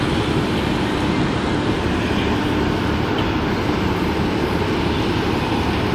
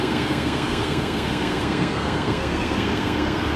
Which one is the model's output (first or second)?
second